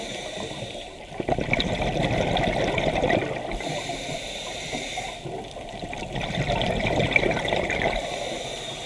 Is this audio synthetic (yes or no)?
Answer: no